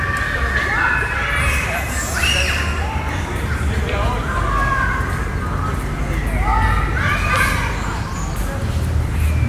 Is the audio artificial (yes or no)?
no